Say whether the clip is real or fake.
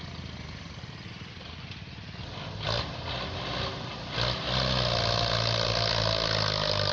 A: real